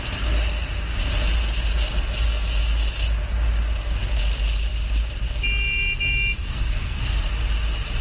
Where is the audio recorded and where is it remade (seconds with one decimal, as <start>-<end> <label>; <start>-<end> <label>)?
0.0-6.4 recorded; 6.4-7.0 remade; 7.0-8.0 recorded